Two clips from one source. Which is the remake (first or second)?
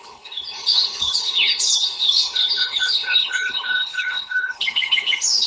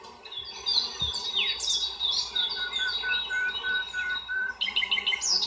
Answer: first